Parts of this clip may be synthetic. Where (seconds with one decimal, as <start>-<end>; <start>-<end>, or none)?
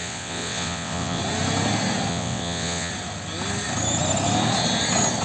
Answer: 0.0-1.2; 2.1-2.9